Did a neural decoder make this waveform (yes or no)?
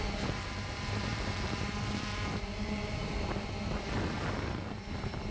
yes